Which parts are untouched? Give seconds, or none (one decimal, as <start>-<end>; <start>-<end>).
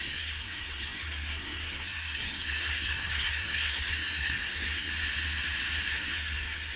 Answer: 4.9-5.9